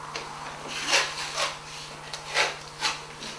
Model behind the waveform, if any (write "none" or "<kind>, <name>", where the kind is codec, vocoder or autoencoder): none